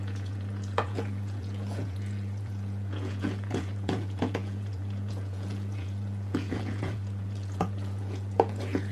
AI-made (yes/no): yes